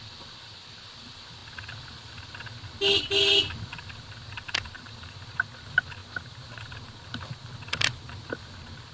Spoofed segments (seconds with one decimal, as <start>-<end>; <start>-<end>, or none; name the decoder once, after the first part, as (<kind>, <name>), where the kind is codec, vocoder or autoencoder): none

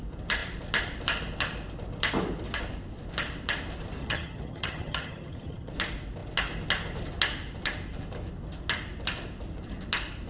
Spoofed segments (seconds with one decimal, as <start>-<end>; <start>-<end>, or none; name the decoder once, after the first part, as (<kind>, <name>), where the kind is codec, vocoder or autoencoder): 4.0-5.7 (vocoder, HiFi-GAN)